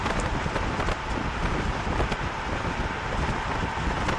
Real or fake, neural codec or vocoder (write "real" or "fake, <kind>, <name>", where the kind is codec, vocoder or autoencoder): real